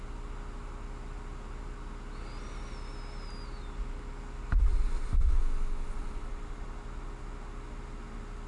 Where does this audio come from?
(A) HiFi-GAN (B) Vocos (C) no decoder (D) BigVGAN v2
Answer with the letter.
C